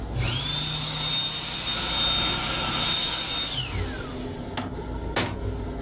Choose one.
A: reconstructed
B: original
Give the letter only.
B